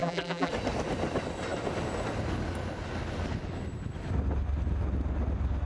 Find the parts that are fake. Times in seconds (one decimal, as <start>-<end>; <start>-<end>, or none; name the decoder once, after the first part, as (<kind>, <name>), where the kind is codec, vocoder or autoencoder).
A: 0.0-0.5 (vocoder, BigVGAN v2)